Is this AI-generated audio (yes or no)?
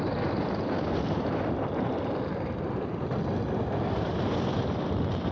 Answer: no